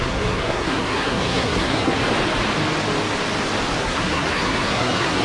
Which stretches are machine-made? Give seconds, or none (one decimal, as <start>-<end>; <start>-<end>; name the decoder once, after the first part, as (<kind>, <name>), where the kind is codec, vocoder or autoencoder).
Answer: 0.0-2.0 (codec, SNAC); 3.8-5.2